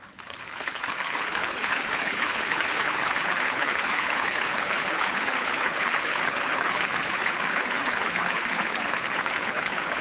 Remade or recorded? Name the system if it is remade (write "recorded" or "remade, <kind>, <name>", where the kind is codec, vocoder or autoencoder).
remade, codec, HILCodec